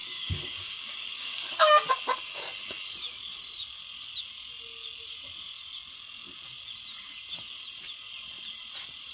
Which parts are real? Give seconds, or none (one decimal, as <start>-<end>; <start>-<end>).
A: 1.9-9.1